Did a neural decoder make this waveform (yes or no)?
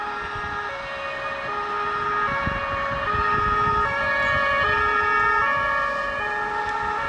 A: no